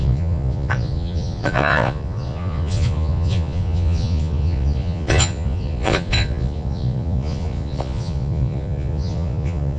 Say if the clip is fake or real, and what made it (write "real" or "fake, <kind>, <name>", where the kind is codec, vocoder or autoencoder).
fake, vocoder, Vocos